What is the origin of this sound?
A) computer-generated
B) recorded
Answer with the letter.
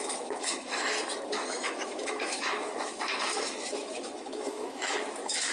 A